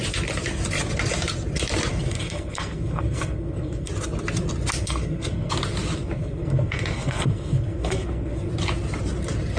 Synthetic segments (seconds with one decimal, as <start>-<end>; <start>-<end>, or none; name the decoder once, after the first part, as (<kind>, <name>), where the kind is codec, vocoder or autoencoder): 1.9-3.9 (codec, SNAC); 4.8-5.5; 6.0-8.5